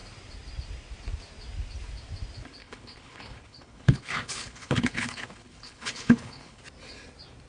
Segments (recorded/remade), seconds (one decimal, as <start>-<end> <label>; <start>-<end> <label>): 0.0-2.6 recorded; 2.6-6.6 remade; 6.6-7.5 recorded